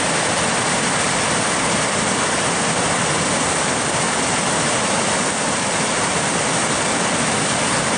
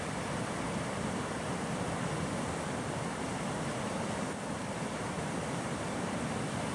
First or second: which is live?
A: first